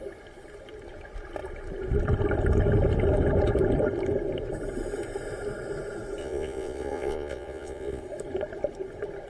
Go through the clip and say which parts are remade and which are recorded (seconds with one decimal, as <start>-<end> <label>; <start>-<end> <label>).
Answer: 0.0-6.2 recorded; 6.2-8.0 remade; 8.0-9.3 recorded